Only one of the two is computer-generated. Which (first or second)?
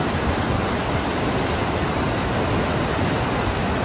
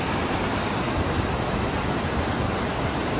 first